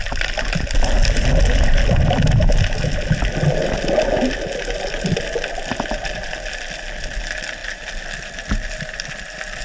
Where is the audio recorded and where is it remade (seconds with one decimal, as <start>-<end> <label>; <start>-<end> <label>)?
0.0-9.6 recorded